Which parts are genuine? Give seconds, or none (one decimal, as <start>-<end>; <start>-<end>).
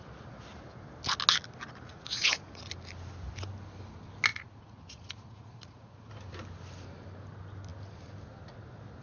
0.0-1.9; 2.7-4.3; 6.1-9.0